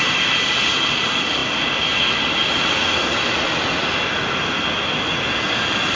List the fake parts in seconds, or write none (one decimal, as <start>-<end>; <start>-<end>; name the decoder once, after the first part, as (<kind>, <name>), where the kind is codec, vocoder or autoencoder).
none